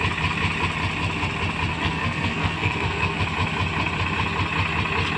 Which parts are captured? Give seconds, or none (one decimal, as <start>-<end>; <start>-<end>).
0.0-1.7; 3.2-5.2

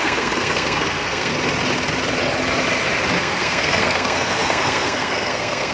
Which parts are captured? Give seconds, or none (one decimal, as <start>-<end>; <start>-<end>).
1.3-3.2

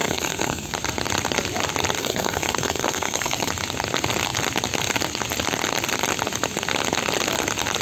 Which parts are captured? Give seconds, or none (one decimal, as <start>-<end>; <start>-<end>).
0.7-2.0; 3.5-7.8